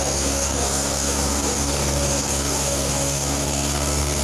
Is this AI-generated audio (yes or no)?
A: yes